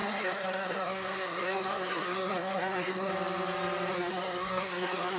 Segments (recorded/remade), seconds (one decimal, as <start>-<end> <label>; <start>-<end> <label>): 0.0-3.1 remade; 3.1-3.9 recorded; 3.9-5.2 remade